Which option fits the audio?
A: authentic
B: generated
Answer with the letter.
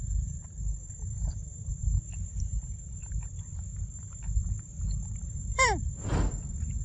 B